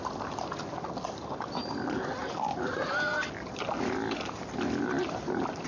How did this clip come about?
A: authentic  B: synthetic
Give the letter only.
A